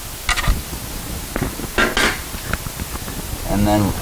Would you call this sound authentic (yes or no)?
yes